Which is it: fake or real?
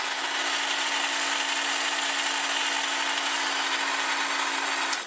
real